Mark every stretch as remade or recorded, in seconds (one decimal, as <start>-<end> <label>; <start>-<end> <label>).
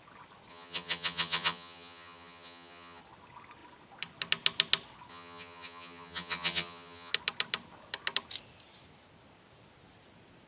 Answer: 0.0-0.5 recorded; 0.5-3.0 remade; 3.0-5.1 recorded; 5.1-7.1 remade; 7.1-10.5 recorded